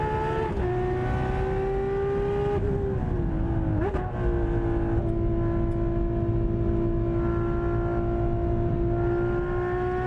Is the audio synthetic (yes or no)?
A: no